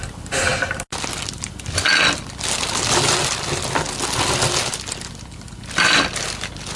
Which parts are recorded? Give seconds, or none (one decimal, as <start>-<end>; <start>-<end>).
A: 0.0-6.8